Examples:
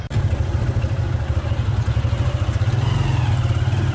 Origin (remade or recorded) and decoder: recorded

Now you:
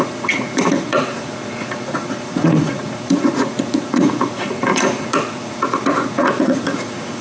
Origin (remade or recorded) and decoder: remade, vocoder, Vocos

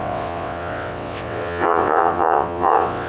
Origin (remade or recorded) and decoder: remade, vocoder, WaveNeXt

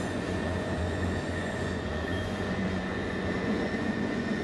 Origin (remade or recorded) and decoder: remade, vocoder, Vocos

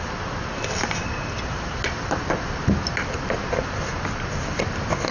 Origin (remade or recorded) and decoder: recorded